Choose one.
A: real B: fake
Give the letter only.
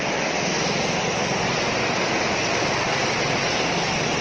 A